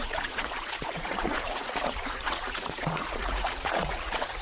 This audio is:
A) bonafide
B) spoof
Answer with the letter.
B